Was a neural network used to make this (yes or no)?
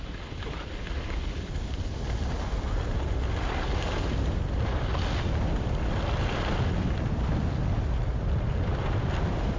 no